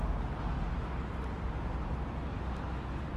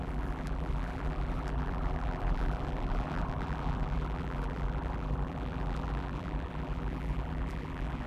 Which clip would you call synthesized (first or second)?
second